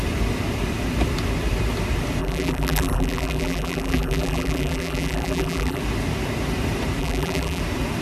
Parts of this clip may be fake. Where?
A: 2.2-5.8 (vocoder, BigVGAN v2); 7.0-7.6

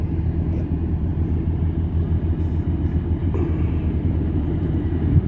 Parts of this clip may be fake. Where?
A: 3.2-5.3 (vocoder, BigVGAN v2)

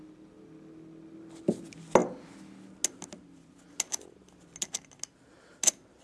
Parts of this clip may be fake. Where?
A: none

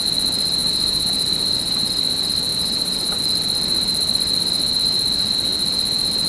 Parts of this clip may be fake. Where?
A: 0.6-1.9 (vocoder, BigVGAN v2); 2.5-3.2

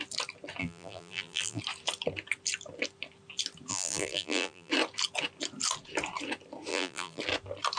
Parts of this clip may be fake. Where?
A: 0.6-1.6 (vocoder, BigVGAN v2); 3.7-4.7; 6.7-7.2

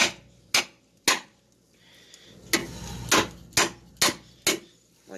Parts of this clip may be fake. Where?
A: none